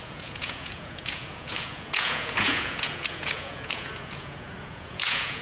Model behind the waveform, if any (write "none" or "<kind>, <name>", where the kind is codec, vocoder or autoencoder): vocoder, Vocos